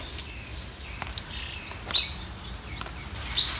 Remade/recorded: recorded